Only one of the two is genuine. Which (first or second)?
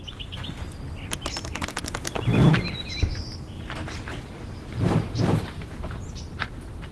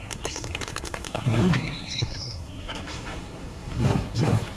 first